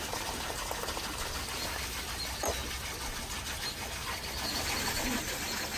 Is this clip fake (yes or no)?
no